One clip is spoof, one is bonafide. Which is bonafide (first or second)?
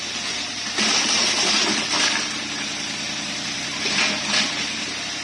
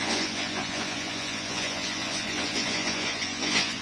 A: first